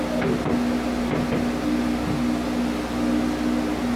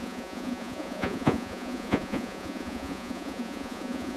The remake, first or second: second